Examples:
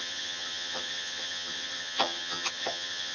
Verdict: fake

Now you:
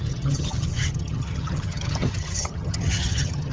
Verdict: fake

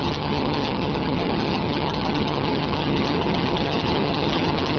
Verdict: fake